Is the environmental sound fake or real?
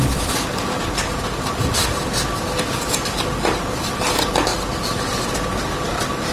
real